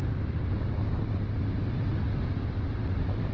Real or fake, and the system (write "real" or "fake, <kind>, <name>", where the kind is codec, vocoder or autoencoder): real